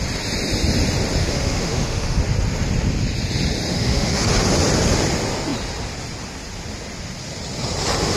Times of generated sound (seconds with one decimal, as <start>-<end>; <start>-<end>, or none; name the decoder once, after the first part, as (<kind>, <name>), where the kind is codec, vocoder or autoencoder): 1.2-2.2 (autoencoder, DAC-VAE); 3.7-4.3